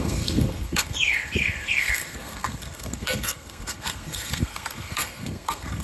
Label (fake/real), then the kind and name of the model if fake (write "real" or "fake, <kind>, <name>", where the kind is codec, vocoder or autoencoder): fake, codec, SNAC